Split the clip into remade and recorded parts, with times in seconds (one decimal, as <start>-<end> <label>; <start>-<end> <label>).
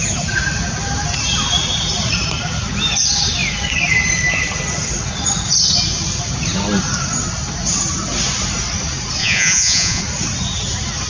0.0-9.2 recorded; 9.2-10.0 remade; 10.0-11.1 recorded